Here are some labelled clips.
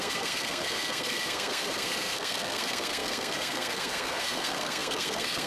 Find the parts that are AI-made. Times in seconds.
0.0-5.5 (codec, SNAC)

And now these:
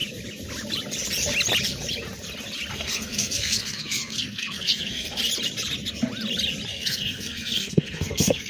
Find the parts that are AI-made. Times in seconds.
2.7-5.2 (codec, SNAC); 6.7-8.5